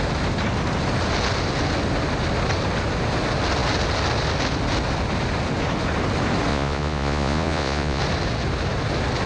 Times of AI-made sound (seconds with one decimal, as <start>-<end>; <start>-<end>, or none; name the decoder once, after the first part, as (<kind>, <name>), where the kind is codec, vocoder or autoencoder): 6.5-8.0 (vocoder, Vocos)